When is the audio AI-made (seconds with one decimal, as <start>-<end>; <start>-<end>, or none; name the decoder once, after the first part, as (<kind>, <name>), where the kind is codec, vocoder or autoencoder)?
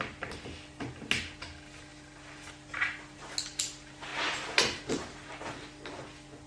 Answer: none